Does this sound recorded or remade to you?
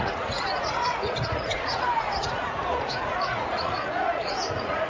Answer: remade